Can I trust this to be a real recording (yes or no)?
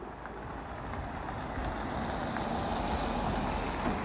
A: yes